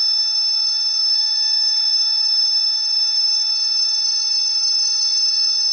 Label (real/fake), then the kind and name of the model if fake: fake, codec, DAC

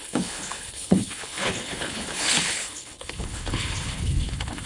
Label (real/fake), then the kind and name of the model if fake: fake, codec, HILCodec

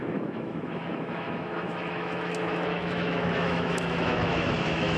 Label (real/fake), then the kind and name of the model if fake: fake, autoencoder, DAC-VAE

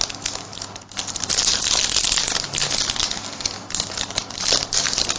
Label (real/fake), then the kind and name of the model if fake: real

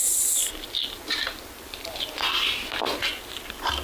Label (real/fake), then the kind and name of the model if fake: real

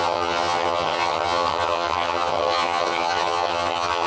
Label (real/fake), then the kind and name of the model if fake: fake, vocoder, HiFi-GAN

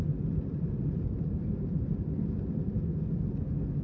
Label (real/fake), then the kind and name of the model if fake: real